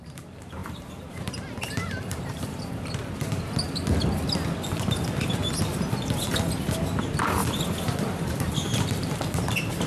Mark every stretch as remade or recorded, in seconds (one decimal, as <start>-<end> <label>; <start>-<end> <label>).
0.0-3.0 remade; 3.0-6.8 recorded; 6.8-7.4 remade; 7.4-8.3 recorded; 8.3-9.9 remade